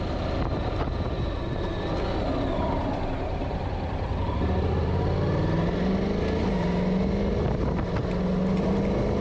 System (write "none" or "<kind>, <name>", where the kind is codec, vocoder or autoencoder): none